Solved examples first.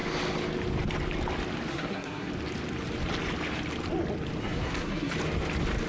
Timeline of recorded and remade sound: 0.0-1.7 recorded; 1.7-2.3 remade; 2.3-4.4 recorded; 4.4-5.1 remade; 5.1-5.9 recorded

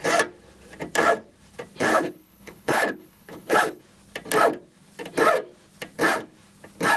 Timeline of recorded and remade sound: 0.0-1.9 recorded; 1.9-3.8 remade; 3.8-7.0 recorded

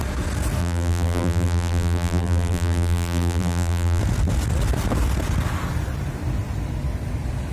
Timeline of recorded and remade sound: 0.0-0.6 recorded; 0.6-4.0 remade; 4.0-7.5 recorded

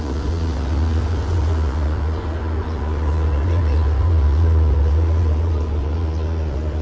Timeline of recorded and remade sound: 0.0-6.8 remade

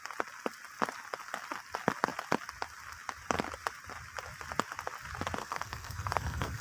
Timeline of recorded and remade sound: 0.0-5.4 recorded; 5.4-6.6 remade

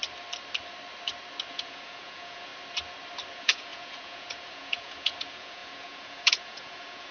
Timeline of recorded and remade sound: 0.0-1.5 recorded; 1.5-2.5 remade; 2.5-3.3 recorded; 3.3-7.1 remade

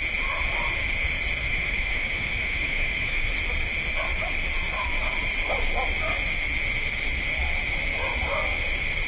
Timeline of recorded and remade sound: 0.0-1.4 recorded; 1.4-3.3 remade; 3.3-9.1 recorded